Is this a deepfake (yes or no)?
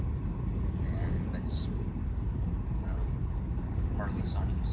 no